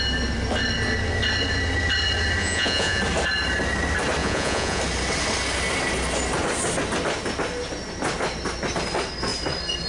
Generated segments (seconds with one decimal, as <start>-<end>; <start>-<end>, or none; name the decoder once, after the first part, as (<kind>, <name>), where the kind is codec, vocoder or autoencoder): 2.4-3.0 (vocoder, Vocos); 4.2-4.8